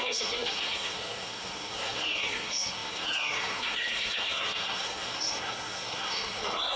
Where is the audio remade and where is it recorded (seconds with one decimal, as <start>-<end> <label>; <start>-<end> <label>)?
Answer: 0.0-6.8 remade